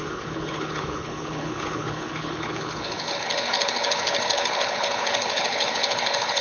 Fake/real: fake